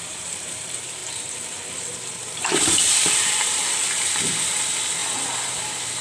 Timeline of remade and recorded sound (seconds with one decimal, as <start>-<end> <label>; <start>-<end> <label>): 0.0-5.0 remade; 5.0-6.0 recorded